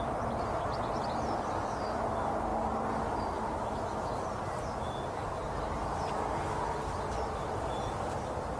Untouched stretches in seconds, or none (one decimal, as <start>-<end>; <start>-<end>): 0.0-8.6